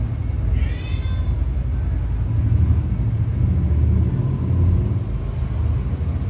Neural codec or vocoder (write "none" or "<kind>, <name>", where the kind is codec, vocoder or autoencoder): none